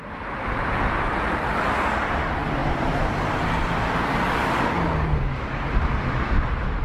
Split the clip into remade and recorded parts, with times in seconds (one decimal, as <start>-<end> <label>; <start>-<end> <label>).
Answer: 0.0-2.6 remade; 2.6-4.6 recorded; 4.6-6.8 remade